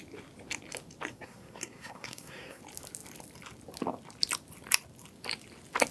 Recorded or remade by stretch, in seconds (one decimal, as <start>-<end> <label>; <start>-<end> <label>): 0.0-1.1 recorded; 1.1-2.6 remade; 2.6-5.9 recorded